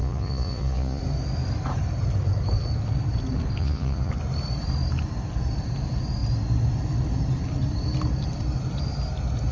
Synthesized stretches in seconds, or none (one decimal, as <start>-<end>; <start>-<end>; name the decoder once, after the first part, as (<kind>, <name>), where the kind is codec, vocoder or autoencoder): 0.0-1.0 (vocoder, Vocos); 3.6-4.1